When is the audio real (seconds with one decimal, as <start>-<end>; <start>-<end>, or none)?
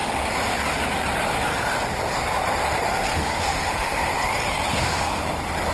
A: 0.0-3.1; 4.1-4.7; 5.2-5.7